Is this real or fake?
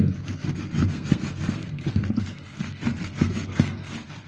fake